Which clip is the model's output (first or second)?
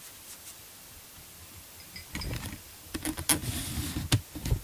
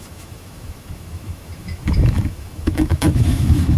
second